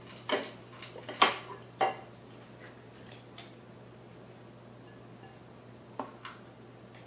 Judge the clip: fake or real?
real